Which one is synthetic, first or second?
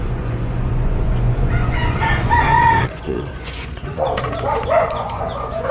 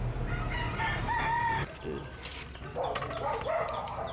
first